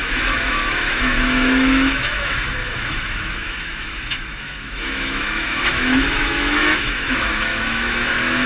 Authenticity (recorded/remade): remade